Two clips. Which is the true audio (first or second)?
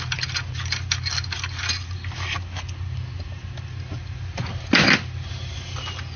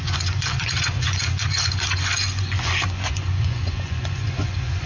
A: first